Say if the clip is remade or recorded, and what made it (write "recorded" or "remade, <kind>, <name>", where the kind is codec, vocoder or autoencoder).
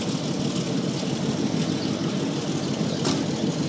recorded